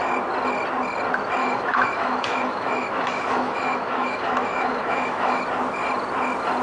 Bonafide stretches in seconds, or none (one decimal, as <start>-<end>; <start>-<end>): 0.0-1.4; 5.4-6.6